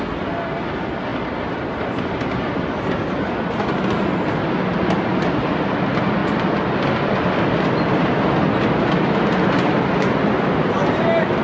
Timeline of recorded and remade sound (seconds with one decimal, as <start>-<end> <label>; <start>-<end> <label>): 0.0-11.4 recorded

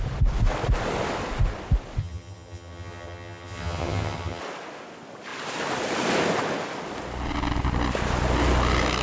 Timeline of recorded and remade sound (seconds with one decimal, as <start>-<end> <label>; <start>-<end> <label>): 0.0-2.0 recorded; 2.0-4.4 remade; 4.4-9.0 recorded

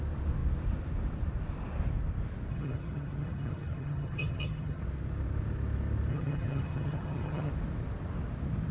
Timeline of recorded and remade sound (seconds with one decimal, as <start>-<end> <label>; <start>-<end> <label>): 0.0-2.5 recorded; 2.5-4.8 remade; 4.8-6.1 recorded; 6.1-7.5 remade; 7.5-8.7 recorded

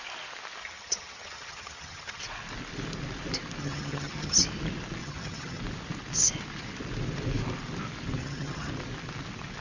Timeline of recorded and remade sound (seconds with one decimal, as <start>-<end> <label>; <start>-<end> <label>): 0.0-0.6 recorded; 0.6-2.2 remade; 2.2-3.6 recorded; 3.6-4.4 remade; 4.4-5.0 recorded; 5.0-5.6 remade; 5.6-8.2 recorded; 8.2-8.7 remade; 8.7-9.6 recorded

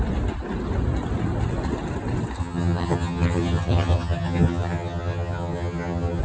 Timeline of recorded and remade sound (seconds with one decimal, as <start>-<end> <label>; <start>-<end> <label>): 0.0-2.4 recorded; 2.4-6.2 remade

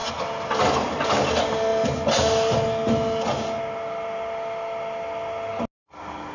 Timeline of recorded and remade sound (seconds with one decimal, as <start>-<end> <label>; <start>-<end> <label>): 0.0-6.3 recorded

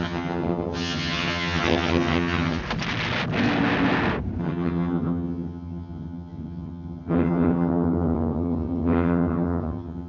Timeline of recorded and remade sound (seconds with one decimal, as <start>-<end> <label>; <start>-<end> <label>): 0.0-2.6 remade; 2.6-4.4 recorded; 4.4-10.1 remade

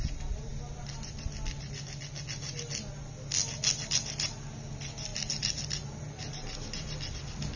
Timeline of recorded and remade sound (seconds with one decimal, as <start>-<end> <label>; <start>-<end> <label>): 0.0-7.6 recorded